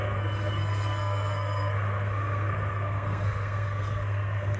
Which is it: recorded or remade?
remade